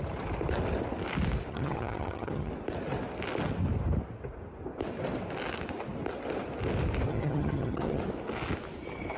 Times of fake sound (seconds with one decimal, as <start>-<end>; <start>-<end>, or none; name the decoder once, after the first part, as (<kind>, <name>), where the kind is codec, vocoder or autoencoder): 1.5-2.5 (vocoder, HiFi-GAN); 7.1-8.0